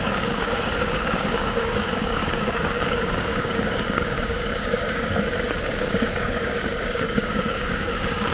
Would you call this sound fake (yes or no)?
yes